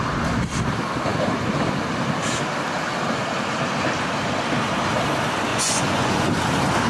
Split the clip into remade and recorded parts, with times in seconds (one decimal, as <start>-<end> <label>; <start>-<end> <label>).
0.0-5.5 recorded; 5.5-6.3 remade; 6.3-6.9 recorded

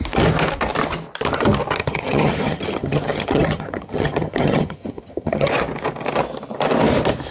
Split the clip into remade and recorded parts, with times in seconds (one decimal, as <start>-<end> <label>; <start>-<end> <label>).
0.0-1.8 recorded; 1.8-5.5 remade; 5.5-7.3 recorded

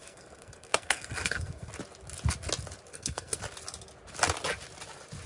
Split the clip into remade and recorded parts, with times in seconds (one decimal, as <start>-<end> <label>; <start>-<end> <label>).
0.0-1.7 remade; 1.7-2.9 recorded; 2.9-3.4 remade; 3.4-5.3 recorded

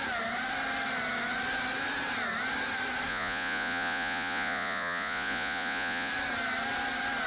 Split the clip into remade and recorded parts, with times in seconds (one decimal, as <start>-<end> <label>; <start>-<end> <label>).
0.0-3.1 recorded; 3.1-6.1 remade; 6.1-7.3 recorded

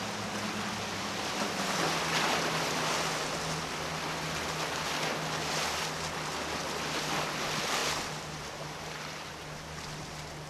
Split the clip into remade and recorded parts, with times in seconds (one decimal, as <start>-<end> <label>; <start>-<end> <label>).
0.0-10.5 recorded

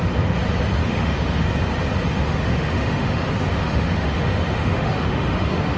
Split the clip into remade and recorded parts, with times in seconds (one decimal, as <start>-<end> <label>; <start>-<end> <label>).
0.0-0.8 recorded; 0.8-1.5 remade; 1.5-2.1 recorded; 2.1-5.8 remade

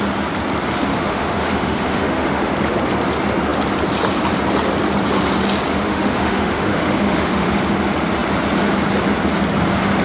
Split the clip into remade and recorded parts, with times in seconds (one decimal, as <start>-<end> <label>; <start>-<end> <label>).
0.0-0.9 recorded; 0.9-2.5 remade; 2.5-5.7 recorded; 5.7-7.5 remade; 7.5-10.0 recorded

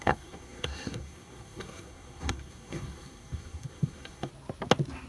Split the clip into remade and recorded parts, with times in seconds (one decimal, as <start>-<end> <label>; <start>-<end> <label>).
0.0-4.3 remade; 4.3-5.1 recorded